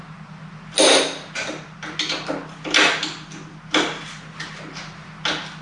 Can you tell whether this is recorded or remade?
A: recorded